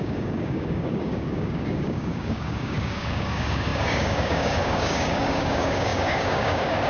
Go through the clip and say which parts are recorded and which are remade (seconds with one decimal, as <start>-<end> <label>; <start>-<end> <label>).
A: 0.0-6.9 remade